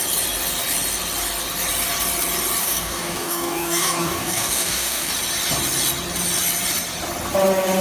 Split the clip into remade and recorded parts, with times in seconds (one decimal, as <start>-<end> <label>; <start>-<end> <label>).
0.0-2.6 recorded; 2.6-5.1 remade; 5.1-7.8 recorded